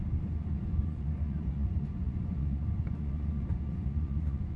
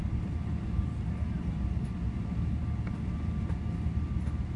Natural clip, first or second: second